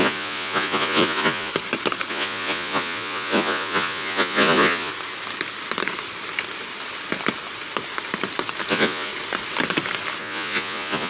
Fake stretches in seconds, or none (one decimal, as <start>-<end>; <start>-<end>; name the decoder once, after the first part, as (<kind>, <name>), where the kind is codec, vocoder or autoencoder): 0.0-1.5 (vocoder, Vocos); 2.1-4.9; 8.7-9.1; 10.2-11.1